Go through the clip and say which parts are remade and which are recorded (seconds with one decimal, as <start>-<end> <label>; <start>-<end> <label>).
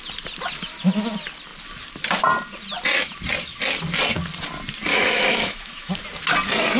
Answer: 0.0-4.9 recorded; 4.9-5.9 remade; 5.9-6.8 recorded